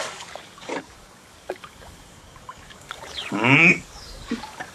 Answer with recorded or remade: remade